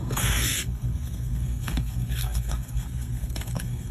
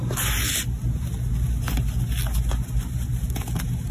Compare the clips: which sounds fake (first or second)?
first